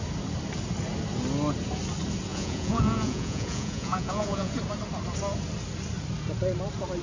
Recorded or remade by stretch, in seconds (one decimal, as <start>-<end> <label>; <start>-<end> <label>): 0.0-2.3 recorded; 2.3-4.5 remade; 4.5-7.0 recorded